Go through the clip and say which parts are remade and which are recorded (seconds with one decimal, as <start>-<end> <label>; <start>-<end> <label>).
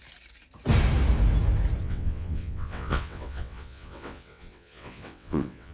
0.0-1.8 recorded; 1.8-5.7 remade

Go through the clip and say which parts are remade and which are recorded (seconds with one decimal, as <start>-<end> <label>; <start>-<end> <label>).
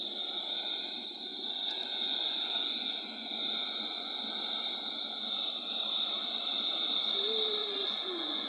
0.0-1.3 recorded; 1.3-4.3 remade; 4.3-7.6 recorded; 7.6-8.5 remade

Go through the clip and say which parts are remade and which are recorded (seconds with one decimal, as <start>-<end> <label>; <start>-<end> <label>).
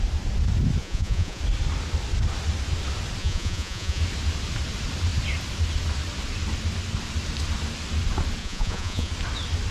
0.0-0.8 recorded; 0.8-1.4 remade; 1.4-3.2 recorded; 3.2-4.0 remade; 4.0-8.4 recorded; 8.4-9.1 remade; 9.1-9.7 recorded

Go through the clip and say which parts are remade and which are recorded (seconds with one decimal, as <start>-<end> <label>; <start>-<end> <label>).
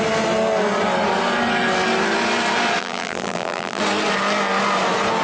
0.0-2.8 recorded; 2.8-3.8 remade; 3.8-5.2 recorded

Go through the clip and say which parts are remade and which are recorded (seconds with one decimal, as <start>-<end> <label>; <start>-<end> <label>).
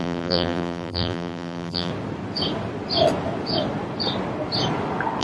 0.0-1.9 remade; 1.9-5.2 recorded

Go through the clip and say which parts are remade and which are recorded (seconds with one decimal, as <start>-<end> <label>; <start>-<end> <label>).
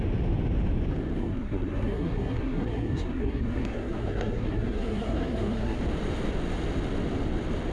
0.0-1.2 recorded; 1.2-5.8 remade; 5.8-7.7 recorded